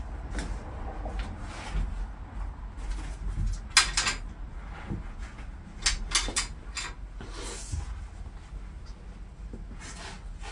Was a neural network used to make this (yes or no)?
no